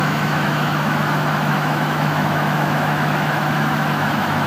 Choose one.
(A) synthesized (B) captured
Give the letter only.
A